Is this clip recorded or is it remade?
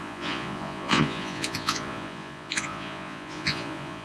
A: remade